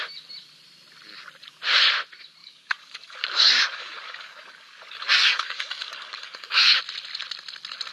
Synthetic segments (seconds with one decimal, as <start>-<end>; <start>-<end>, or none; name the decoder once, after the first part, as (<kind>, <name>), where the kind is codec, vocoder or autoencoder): 2.4-6.8 (codec, DAC)